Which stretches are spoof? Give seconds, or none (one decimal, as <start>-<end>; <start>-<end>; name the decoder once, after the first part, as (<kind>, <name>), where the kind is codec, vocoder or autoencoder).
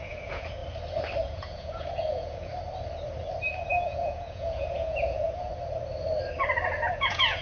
0.0-0.6 (vocoder, Vocos); 1.2-2.5; 3.7-5.5; 6.9-7.4